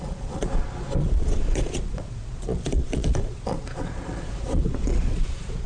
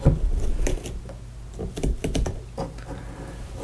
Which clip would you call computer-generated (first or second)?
first